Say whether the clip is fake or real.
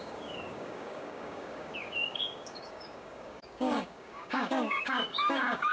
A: fake